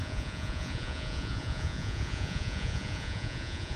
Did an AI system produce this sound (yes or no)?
yes